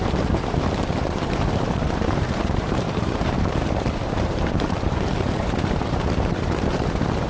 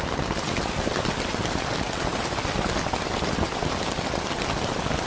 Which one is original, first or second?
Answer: second